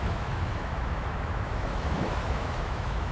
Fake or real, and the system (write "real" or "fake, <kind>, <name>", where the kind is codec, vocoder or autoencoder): fake, autoencoder, DAC-VAE